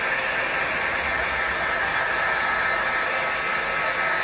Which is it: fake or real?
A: real